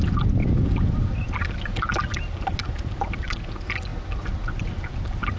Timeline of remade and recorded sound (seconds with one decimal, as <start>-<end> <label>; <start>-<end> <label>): 0.0-5.4 recorded